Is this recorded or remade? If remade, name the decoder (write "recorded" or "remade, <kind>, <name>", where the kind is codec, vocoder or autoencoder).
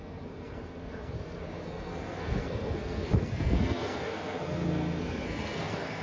remade, codec, SNAC